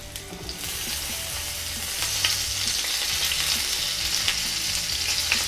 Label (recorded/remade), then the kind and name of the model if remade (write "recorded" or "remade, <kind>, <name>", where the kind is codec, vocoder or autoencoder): recorded